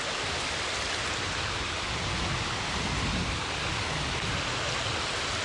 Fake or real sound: real